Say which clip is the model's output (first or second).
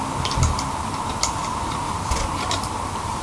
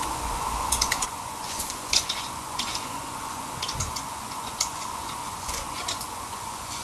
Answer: second